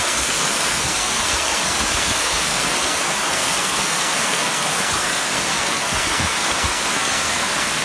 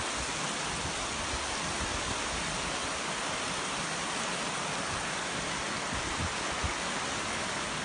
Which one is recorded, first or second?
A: second